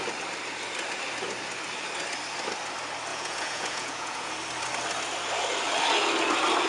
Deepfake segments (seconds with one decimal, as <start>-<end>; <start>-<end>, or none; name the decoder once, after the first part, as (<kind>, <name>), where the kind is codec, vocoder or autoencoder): 3.1-4.3 (vocoder, Vocos)